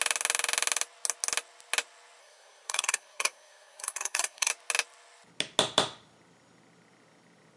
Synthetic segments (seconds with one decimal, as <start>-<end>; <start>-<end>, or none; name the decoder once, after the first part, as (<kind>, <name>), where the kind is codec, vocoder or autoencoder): 2.2-4.5 (codec, SNAC)